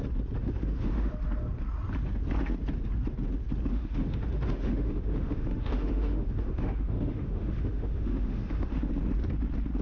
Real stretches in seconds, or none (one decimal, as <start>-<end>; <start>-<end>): 0.0-0.4; 1.1-3.7; 8.9-9.8